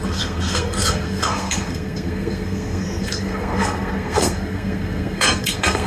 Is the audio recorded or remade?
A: remade